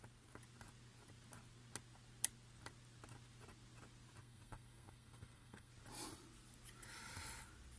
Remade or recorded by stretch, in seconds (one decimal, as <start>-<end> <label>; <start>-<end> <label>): 0.0-4.2 recorded; 4.2-5.7 remade; 5.7-7.8 recorded